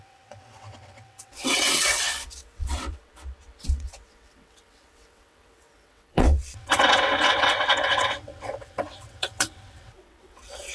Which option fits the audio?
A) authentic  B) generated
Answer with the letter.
B